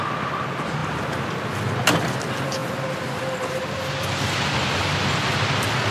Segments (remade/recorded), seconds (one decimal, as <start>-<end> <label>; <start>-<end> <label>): 0.0-5.9 recorded